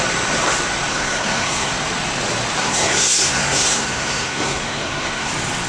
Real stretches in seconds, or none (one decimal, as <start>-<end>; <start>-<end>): 0.0-0.9; 1.7-2.6; 5.3-5.7